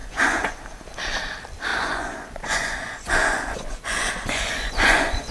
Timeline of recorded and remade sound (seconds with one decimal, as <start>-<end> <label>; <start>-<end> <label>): 0.0-0.6 remade; 0.6-1.7 recorded; 1.7-5.3 remade